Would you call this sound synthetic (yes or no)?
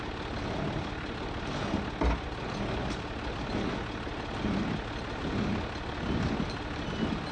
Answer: no